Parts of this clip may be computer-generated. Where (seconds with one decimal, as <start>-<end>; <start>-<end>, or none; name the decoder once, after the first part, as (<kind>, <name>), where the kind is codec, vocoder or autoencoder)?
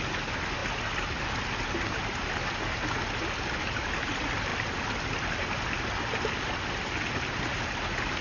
none